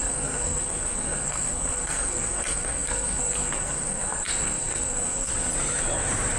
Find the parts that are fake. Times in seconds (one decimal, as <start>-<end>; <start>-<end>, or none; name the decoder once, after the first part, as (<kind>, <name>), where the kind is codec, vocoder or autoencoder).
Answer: 0.0-5.3 (codec, SNAC)